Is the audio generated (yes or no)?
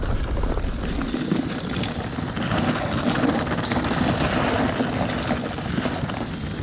no